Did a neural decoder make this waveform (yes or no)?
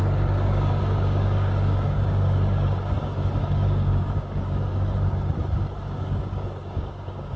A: yes